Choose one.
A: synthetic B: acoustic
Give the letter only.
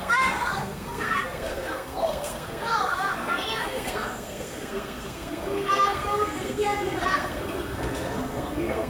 A